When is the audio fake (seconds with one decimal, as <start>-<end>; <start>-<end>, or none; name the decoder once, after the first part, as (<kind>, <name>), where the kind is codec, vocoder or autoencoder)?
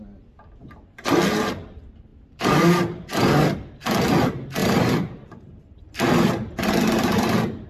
4.6-5.8 (vocoder, BigVGAN v2)